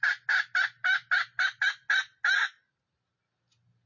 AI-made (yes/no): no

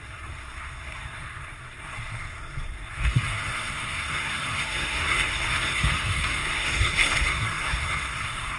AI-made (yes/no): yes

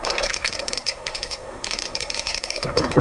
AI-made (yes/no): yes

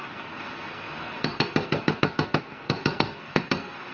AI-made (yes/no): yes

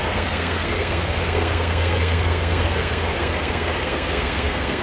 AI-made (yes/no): yes